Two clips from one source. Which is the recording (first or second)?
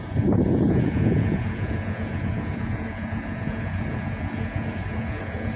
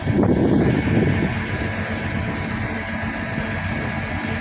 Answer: second